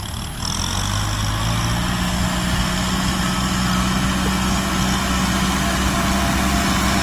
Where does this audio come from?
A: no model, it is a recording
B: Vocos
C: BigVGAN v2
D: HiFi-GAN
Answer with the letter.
A